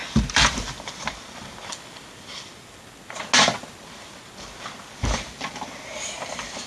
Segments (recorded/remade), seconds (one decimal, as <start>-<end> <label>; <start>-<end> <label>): 0.0-1.4 remade; 1.4-6.7 recorded